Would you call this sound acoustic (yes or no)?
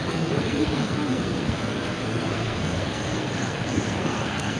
no